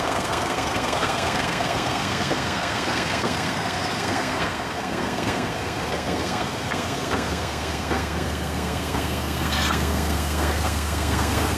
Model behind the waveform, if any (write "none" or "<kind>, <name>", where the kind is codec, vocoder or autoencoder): codec, SNAC